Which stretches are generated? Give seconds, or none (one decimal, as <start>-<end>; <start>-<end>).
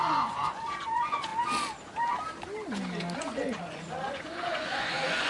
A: 0.0-1.3; 3.2-5.3